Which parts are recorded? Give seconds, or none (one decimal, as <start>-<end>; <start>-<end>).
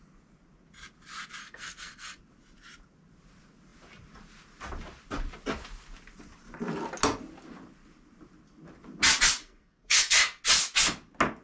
0.0-1.4; 2.2-9.4; 10.4-11.4